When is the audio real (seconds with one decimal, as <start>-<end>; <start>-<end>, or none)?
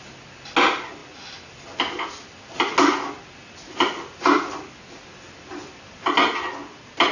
0.0-7.1